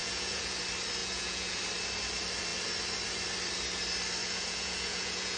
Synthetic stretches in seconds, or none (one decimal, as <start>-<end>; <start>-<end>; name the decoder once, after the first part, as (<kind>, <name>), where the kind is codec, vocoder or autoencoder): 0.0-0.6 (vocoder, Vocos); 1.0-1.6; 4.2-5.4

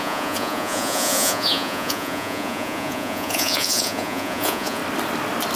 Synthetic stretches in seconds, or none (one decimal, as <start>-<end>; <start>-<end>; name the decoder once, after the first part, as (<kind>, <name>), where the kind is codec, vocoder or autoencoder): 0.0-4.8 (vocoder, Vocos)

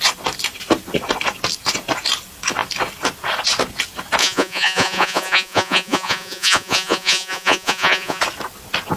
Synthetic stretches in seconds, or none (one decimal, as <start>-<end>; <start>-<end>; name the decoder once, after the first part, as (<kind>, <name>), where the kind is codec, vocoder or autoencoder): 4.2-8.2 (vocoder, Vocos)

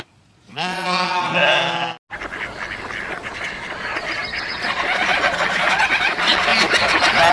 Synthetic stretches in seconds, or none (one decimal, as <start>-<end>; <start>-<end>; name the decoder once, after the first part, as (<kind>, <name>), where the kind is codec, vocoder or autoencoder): 0.0-1.4 (vocoder, Vocos); 3.1-6.5

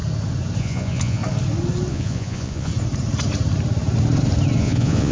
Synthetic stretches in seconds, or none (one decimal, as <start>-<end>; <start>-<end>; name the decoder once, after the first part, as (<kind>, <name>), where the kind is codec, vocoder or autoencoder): 0.6-1.2 (vocoder, Vocos); 1.9-2.7; 4.6-5.1

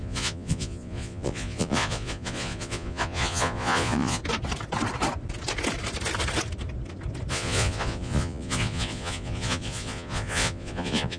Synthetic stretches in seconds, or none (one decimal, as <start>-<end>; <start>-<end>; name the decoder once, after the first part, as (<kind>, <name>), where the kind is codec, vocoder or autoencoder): 0.0-4.2 (vocoder, Vocos); 7.3-11.2

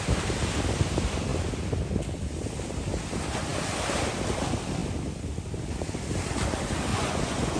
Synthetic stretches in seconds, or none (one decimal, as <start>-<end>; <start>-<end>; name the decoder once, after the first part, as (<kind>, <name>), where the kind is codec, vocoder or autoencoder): 6.9-7.6 (vocoder, Vocos)